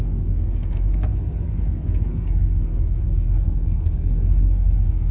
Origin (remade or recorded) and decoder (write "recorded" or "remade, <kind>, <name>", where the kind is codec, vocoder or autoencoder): remade, codec, SNAC